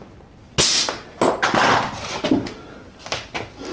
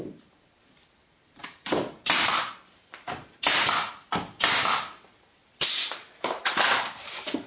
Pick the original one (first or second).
first